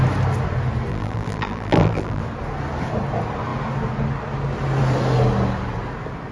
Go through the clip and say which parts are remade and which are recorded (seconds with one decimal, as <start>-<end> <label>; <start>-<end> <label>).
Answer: 0.0-0.9 recorded; 0.9-2.2 remade; 2.2-6.3 recorded